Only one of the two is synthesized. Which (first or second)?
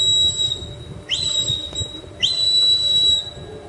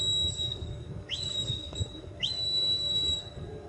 second